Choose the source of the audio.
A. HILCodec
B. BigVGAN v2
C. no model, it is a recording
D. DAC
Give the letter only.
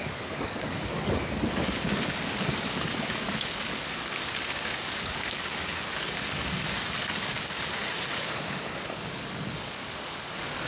D